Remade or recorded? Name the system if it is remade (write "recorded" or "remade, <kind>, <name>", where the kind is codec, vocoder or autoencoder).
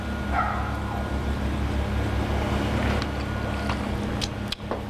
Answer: recorded